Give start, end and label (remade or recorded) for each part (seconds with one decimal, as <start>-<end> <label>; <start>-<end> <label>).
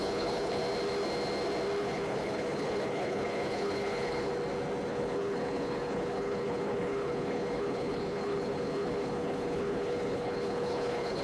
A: 0.0-0.6 remade; 0.6-1.8 recorded; 1.8-4.3 remade; 4.3-4.9 recorded; 4.9-11.2 remade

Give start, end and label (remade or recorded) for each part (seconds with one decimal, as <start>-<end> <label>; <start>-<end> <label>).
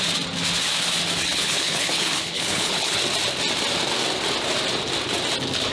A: 0.0-1.2 recorded; 1.2-3.0 remade; 3.0-5.7 recorded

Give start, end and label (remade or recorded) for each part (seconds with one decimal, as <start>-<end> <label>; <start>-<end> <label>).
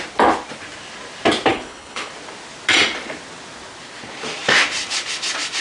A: 0.0-1.5 recorded; 1.5-2.1 remade; 2.1-5.6 recorded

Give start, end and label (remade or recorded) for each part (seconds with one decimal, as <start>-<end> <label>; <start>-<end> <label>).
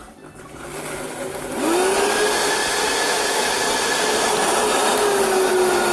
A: 0.0-5.9 recorded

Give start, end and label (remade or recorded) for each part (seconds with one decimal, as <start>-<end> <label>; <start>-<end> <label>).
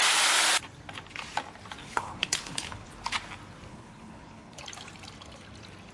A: 0.0-1.8 recorded; 1.8-2.9 remade; 2.9-3.7 recorded; 3.7-4.6 remade; 4.6-5.9 recorded